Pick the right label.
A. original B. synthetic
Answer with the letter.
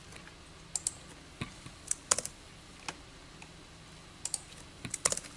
A